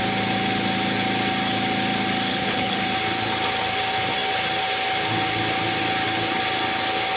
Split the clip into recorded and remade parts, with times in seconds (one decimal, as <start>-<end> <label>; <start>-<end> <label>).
0.0-2.3 recorded; 2.3-2.8 remade; 2.8-7.2 recorded